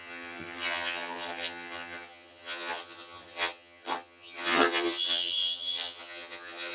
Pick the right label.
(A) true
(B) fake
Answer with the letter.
B